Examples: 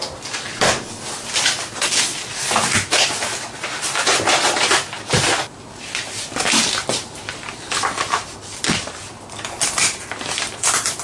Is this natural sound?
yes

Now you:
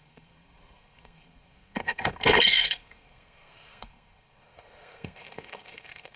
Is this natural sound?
no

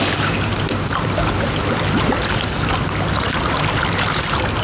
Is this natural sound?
yes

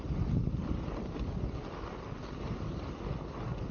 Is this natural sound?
yes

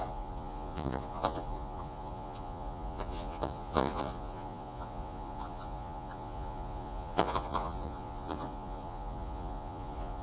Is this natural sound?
no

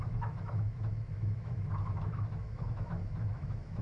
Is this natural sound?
no